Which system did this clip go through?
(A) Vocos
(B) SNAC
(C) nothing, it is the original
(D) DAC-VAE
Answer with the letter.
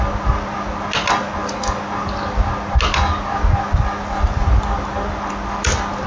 C